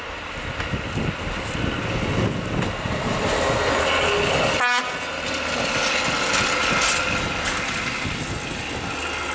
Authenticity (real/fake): real